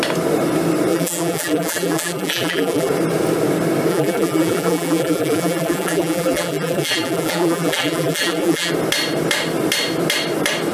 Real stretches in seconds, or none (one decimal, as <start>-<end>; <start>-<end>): 0.0-0.9; 2.9-3.9; 8.7-10.7